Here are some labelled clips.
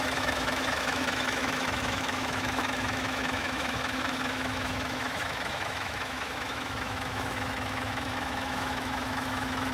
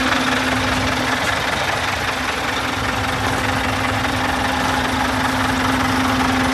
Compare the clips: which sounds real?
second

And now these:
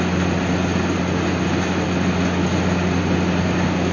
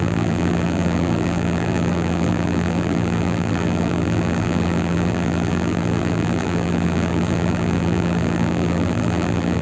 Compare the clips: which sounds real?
first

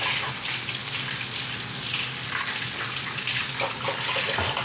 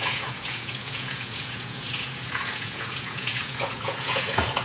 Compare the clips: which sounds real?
first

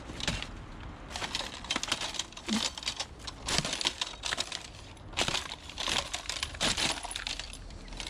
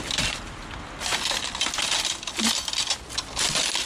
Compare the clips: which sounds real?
second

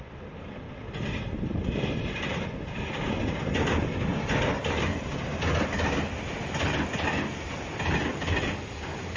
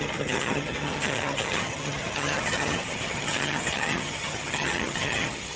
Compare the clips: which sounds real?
first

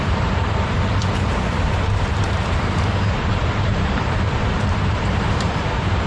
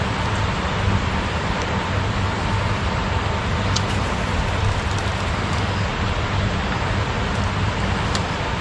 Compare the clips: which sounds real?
second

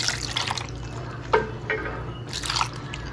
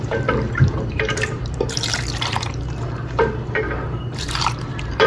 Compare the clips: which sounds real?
first